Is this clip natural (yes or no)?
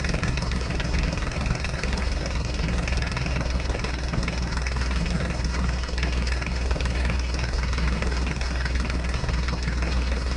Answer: no